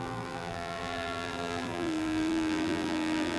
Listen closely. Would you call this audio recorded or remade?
remade